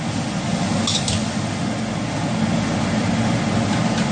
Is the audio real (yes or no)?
yes